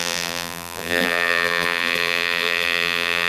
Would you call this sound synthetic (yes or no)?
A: yes